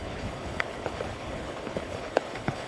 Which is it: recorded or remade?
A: remade